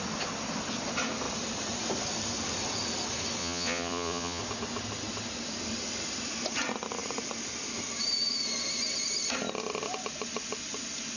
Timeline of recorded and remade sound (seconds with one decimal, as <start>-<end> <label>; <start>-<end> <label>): 0.0-3.4 recorded; 3.4-4.4 remade; 4.4-11.2 recorded